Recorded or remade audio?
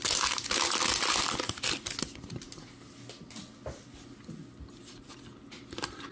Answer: recorded